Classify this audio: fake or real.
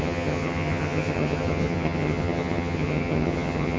fake